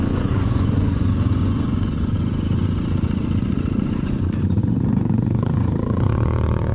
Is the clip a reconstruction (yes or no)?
yes